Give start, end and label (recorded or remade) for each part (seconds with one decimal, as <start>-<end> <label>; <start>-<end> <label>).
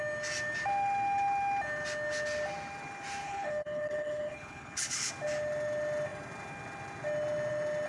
0.0-3.2 recorded; 3.2-5.1 remade; 5.1-7.9 recorded